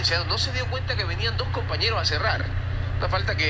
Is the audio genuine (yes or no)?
yes